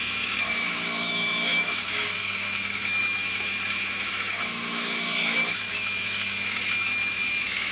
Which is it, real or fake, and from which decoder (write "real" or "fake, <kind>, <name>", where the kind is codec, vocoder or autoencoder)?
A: fake, autoencoder, DAC-VAE